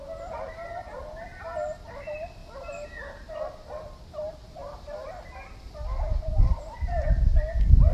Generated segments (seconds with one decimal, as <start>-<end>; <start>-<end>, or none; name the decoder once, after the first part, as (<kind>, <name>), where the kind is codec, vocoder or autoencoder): none